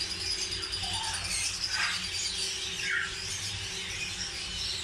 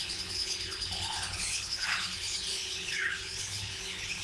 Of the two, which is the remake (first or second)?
second